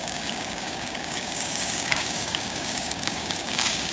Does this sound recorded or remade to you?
remade